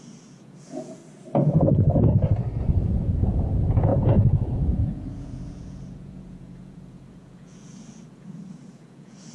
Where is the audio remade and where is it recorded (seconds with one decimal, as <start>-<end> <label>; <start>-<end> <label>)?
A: 0.0-1.0 remade; 1.0-2.8 recorded; 2.8-9.3 remade